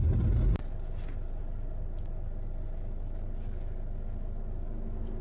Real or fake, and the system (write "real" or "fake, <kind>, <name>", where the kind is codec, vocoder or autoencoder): real